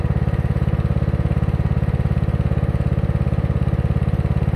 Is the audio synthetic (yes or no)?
no